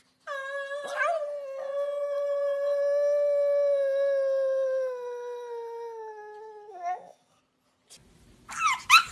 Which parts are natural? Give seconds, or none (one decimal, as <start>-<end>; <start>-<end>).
0.0-6.7; 7.4-9.1